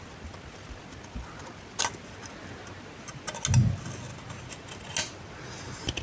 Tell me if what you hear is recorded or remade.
recorded